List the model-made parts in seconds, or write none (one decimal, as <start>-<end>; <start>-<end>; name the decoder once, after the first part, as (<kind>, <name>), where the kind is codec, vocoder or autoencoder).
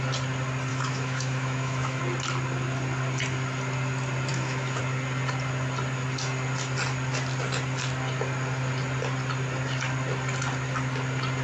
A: 0.7-2.0 (autoencoder, DAC-VAE); 4.3-4.8